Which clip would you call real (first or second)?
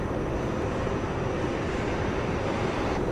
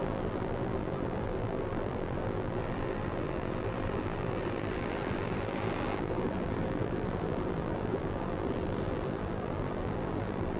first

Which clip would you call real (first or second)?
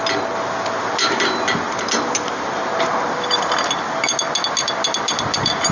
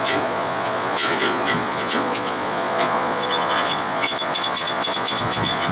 first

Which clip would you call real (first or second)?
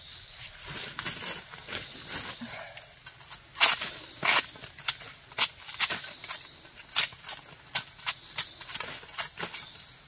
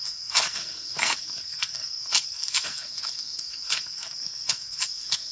first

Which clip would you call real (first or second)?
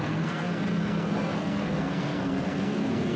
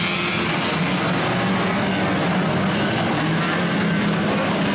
second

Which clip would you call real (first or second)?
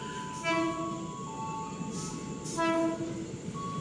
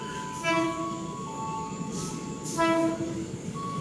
first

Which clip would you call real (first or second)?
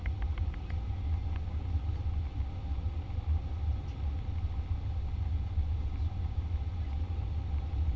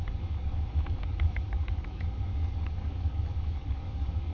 first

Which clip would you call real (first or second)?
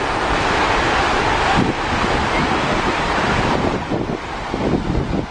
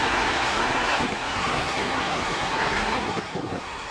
first